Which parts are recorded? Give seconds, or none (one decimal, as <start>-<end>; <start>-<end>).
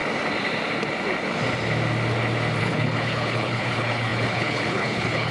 0.0-2.6